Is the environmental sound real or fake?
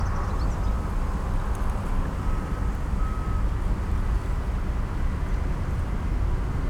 real